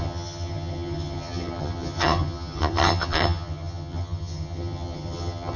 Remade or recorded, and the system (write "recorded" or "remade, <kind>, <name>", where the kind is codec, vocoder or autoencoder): remade, vocoder, HiFi-GAN